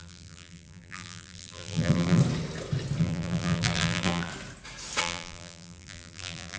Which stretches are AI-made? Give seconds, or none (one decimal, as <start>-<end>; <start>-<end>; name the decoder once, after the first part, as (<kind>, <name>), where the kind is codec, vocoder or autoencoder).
0.0-2.2 (vocoder, BigVGAN v2); 3.0-4.3; 5.0-6.6